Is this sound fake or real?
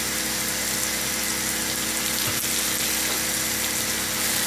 real